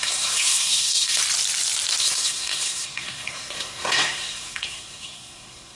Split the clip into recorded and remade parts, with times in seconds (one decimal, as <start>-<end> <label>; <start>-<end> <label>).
0.0-1.2 remade; 1.2-2.0 recorded; 2.0-5.8 remade